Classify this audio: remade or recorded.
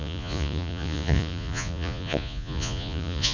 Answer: remade